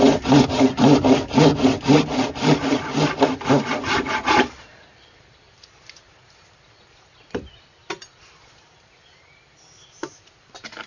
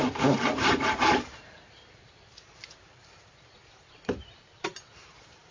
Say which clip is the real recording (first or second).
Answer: first